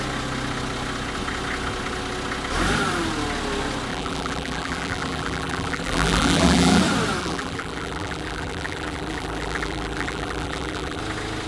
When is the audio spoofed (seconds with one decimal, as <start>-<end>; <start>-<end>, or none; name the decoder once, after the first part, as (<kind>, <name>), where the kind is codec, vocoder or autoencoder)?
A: 3.9-6.8 (vocoder, BigVGAN v2); 7.2-11.0